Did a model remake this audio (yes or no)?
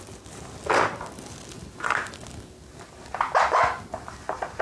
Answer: no